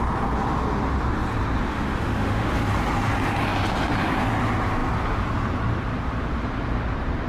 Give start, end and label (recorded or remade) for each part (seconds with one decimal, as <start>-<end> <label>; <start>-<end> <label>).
0.0-1.6 recorded; 1.6-2.5 remade; 2.5-7.3 recorded